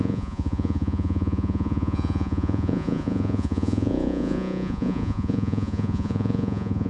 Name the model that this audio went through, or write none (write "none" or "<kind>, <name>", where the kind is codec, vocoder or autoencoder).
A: vocoder, Vocos